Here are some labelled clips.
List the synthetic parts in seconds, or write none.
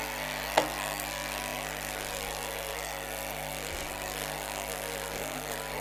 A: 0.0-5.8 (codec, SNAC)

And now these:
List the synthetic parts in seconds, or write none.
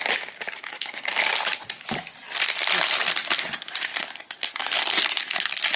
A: 3.9-4.8 (codec, DAC)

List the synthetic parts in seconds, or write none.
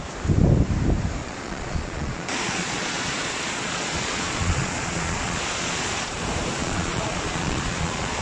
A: 1.2-6.1 (vocoder, Vocos); 6.6-8.2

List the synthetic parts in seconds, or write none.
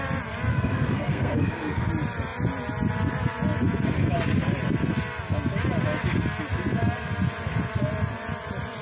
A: 0.5-1.9 (codec, SNAC)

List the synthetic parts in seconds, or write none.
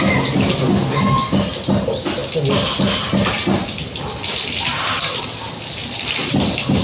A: none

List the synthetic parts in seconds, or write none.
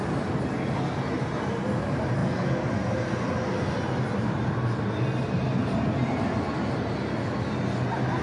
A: none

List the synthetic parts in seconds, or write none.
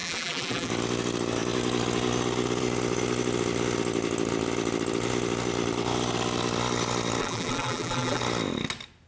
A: 0.0-0.7 (vocoder, BigVGAN v2); 7.2-8.2